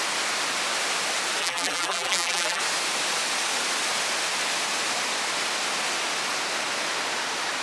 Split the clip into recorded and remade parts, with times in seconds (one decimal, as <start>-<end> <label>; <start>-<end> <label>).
0.0-1.4 recorded; 1.4-2.6 remade; 2.6-7.6 recorded